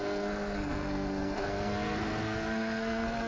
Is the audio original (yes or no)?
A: no